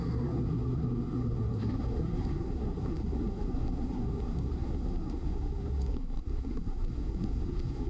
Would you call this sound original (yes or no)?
no